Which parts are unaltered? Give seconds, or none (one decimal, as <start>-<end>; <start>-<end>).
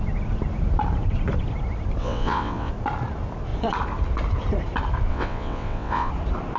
0.0-2.0; 2.7-5.1; 6.1-6.6